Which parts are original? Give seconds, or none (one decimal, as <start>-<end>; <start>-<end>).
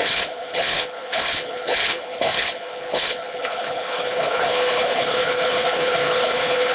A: none